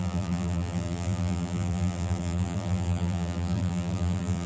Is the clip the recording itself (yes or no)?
no